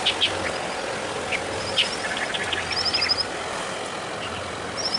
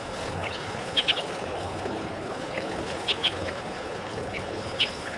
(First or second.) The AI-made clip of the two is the second